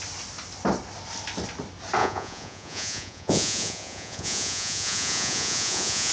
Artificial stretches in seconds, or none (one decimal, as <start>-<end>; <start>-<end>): 2.0-6.1